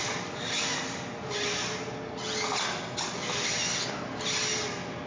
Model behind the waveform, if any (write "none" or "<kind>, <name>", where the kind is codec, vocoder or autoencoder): none